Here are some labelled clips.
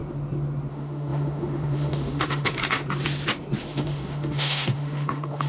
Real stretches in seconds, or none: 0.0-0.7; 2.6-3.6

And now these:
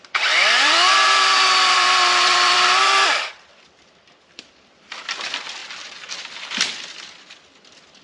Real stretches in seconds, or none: 5.6-8.0

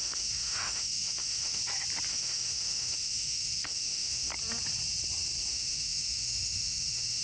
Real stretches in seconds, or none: 1.6-2.1; 4.3-5.5